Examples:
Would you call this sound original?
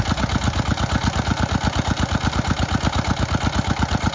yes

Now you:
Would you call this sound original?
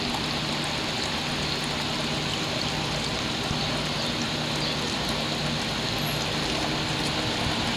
yes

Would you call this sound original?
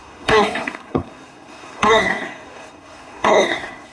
no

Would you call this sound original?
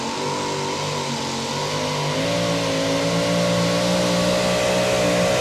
yes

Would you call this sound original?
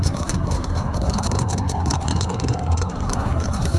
no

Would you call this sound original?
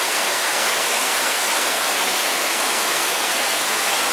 no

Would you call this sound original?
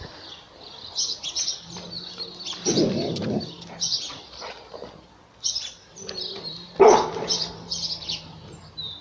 yes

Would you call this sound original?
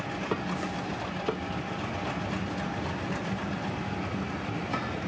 yes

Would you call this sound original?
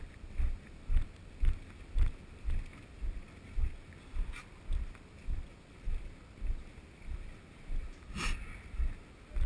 yes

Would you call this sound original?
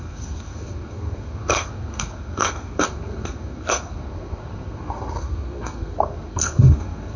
no